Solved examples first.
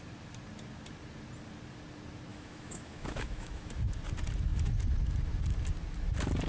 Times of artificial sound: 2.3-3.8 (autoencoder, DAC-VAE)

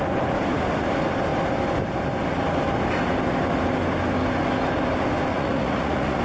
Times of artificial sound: 5.3-6.2 (vocoder, Vocos)

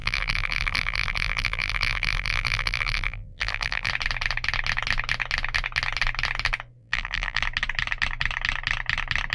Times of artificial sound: 0.0-3.9 (vocoder, BigVGAN v2); 6.8-7.4

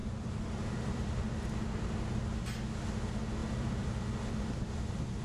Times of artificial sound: 0.0-1.3 (vocoder, BigVGAN v2); 3.4-3.9

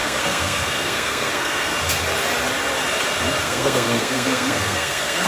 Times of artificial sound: 0.0-1.7 (codec, SNAC); 3.4-5.3

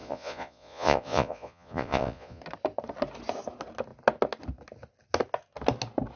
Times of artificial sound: 0.0-2.4 (vocoder, Vocos)

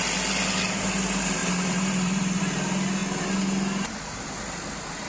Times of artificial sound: 1.4-2.4 (vocoder, BigVGAN v2)